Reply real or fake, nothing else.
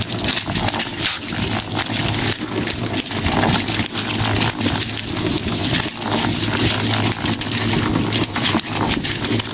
real